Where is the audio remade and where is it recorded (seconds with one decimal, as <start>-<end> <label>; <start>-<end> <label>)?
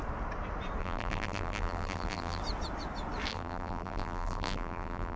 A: 0.0-0.8 recorded; 0.8-2.4 remade; 2.4-3.3 recorded; 3.3-5.2 remade